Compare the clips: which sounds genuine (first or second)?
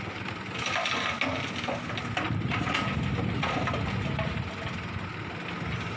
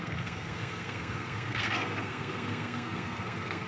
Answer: first